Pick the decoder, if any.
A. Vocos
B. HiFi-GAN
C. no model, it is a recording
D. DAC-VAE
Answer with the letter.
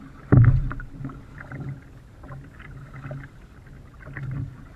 C